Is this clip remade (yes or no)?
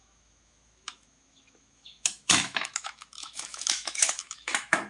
yes